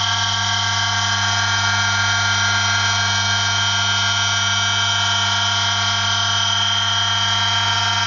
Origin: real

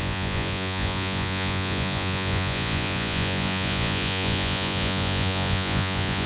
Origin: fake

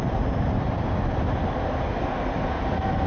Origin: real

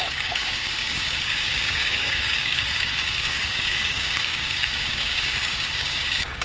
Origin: fake